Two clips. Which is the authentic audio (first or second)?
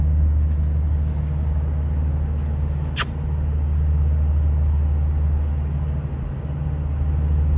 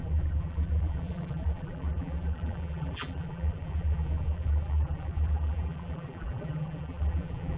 first